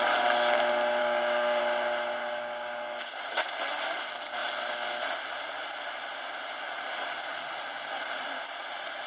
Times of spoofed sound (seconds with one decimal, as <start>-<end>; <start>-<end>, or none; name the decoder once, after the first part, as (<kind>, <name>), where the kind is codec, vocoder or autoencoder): 1.0-1.6 (codec, DAC); 2.2-3.2